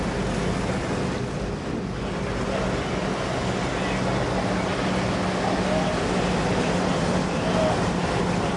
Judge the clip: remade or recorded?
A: recorded